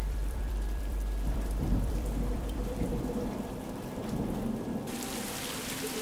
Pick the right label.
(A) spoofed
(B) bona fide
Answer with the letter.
A